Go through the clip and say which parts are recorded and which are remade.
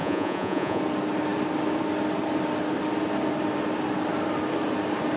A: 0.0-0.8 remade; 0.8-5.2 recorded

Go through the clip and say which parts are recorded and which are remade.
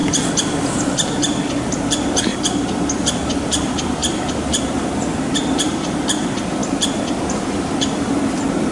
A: 0.0-0.7 recorded; 0.7-6.6 remade; 6.6-7.3 recorded; 7.3-8.7 remade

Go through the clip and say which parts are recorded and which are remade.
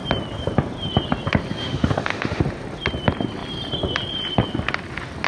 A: 0.0-1.6 recorded; 1.6-2.4 remade; 2.4-5.3 recorded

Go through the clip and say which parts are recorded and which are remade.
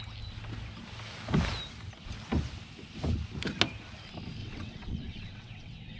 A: 0.0-4.4 recorded; 4.4-6.0 remade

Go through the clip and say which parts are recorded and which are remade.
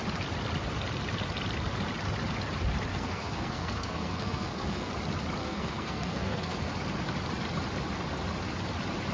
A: 0.0-2.9 recorded; 2.9-4.9 remade; 4.9-5.4 recorded; 5.4-6.7 remade; 6.7-9.1 recorded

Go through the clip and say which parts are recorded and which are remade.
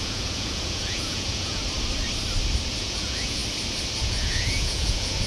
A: 0.0-1.6 remade; 1.6-2.8 recorded; 2.8-3.4 remade; 3.4-4.0 recorded; 4.0-5.3 remade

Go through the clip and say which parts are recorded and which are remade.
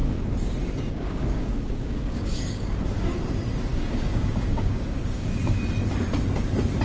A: 0.0-2.8 remade; 2.8-3.7 recorded; 3.7-5.6 remade; 5.6-6.8 recorded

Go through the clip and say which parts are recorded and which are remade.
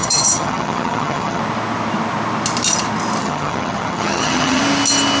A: 0.0-1.4 remade; 1.4-3.2 recorded; 3.2-4.6 remade; 4.6-5.2 recorded